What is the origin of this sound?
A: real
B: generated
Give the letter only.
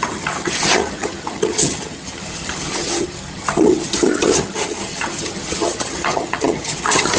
B